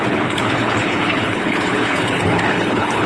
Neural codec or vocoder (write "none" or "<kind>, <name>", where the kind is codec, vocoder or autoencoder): codec, HILCodec